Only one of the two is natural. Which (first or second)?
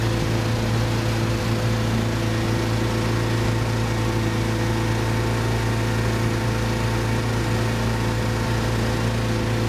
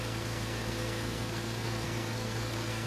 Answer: first